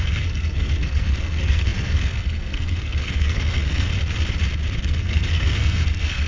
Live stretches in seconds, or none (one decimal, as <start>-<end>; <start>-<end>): 3.9-4.8